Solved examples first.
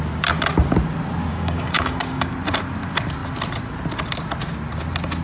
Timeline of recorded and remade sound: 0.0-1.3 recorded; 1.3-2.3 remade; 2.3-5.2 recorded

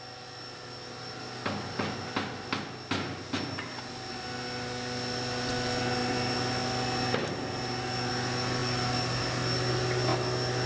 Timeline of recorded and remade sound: 0.0-10.7 recorded

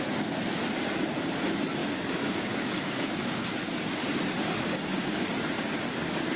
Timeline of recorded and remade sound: 0.0-1.8 recorded; 1.8-4.0 remade; 4.0-4.9 recorded; 4.9-5.9 remade; 5.9-6.4 recorded

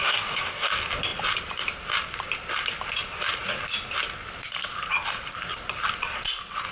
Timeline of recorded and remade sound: 0.0-0.7 remade; 0.7-6.7 recorded

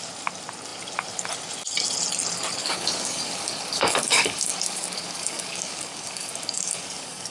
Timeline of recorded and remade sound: 0.0-2.6 recorded; 2.6-7.3 remade

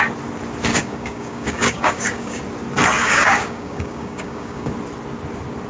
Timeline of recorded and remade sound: 0.0-0.8 recorded; 0.8-2.4 remade; 2.4-3.0 recorded; 3.0-4.7 remade; 4.7-5.7 recorded

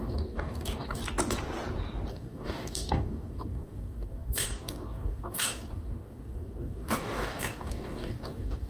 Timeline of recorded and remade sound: 0.0-1.0 remade; 1.0-2.1 recorded; 2.1-8.7 remade